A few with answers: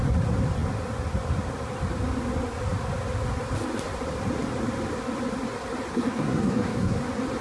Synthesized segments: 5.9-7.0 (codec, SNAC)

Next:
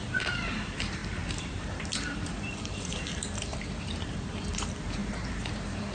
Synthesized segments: 0.0-5.9 (vocoder, BigVGAN v2)

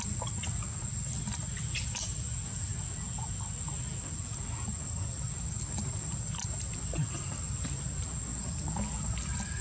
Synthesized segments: none

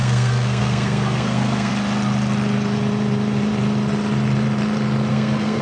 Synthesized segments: 0.0-1.7 (codec, SNAC); 5.1-5.6

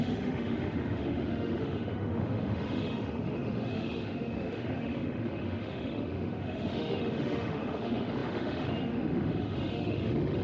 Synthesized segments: 0.0-10.4 (autoencoder, DAC-VAE)

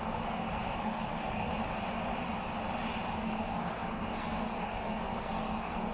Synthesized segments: 0.0-1.5 (codec, SNAC); 3.2-5.9

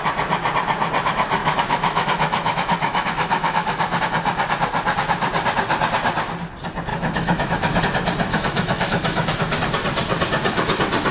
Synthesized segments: 1.4-4.0 (autoencoder, DAC-VAE); 6.9-7.8; 8.3-9.6

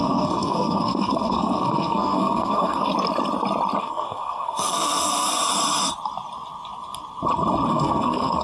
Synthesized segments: 0.0-2.9 (codec, SNAC); 3.8-5.4; 7.7-8.4